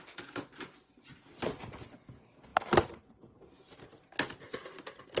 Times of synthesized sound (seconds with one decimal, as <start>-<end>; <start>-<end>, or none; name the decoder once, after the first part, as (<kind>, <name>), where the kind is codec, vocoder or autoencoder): none